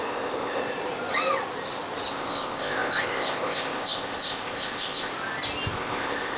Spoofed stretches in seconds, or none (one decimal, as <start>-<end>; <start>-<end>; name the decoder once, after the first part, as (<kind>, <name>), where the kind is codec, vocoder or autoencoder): 0.0-0.6 (codec, ZipCodec); 2.1-5.1; 5.7-6.4